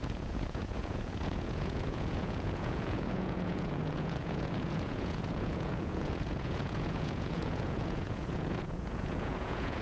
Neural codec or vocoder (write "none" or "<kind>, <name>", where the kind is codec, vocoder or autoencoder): vocoder, Vocos